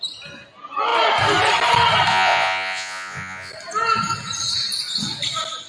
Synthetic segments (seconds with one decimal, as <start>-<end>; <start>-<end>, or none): 2.1-3.5